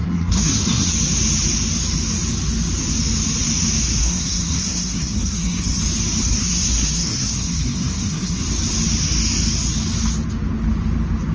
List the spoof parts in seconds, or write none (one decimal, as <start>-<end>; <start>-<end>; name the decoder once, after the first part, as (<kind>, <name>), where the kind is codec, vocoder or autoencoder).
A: 0.0-0.9 (codec, SNAC); 4.0-5.8; 6.2-8.4